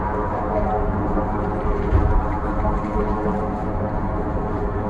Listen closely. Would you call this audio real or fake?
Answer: fake